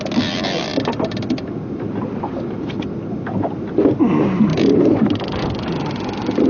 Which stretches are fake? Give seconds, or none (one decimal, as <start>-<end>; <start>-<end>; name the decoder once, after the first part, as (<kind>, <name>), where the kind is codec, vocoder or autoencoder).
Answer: none